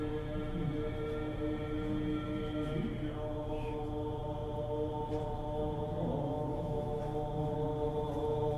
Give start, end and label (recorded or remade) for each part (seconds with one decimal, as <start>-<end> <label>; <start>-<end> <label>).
0.0-6.5 recorded; 6.5-7.0 remade; 7.0-8.6 recorded